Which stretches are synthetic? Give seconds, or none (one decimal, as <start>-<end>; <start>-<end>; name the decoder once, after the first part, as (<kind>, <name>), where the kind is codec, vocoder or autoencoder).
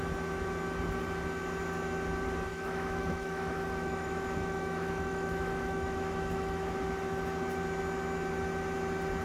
2.5-6.7 (autoencoder, DAC-VAE)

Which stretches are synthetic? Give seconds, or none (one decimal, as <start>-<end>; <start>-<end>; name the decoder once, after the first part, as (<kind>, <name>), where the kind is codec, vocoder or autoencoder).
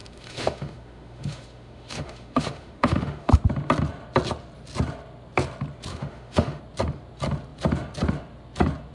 0.0-3.3 (autoencoder, DAC-VAE); 5.9-6.6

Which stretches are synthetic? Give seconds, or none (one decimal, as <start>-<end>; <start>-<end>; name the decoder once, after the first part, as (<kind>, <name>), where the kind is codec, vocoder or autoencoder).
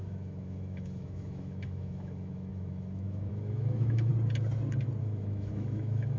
0.0-4.1 (autoencoder, DAC-VAE); 5.0-6.2